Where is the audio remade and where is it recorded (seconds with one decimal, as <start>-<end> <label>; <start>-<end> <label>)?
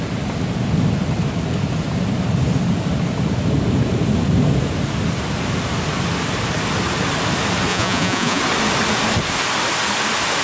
0.0-7.7 recorded; 7.7-8.4 remade; 8.4-10.4 recorded